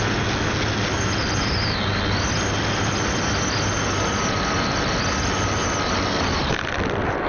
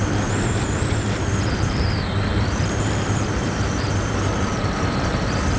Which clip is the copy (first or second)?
second